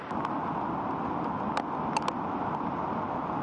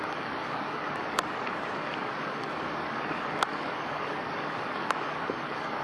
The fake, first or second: second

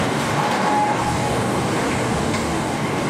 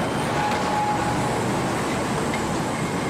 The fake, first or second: first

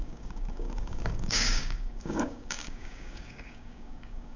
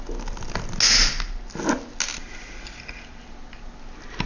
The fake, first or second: first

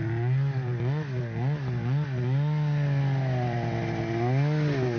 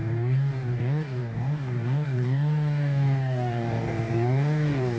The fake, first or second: second